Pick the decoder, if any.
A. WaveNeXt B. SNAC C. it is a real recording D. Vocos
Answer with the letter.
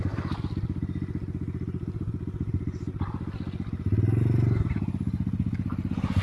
C